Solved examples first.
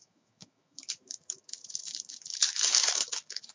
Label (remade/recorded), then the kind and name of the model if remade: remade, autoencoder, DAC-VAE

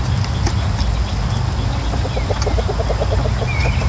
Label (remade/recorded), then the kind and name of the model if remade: recorded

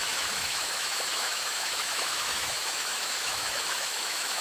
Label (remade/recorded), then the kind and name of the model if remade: remade, autoencoder, DAC-VAE